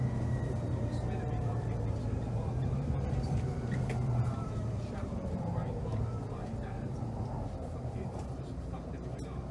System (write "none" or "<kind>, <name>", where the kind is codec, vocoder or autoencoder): vocoder, BigVGAN v2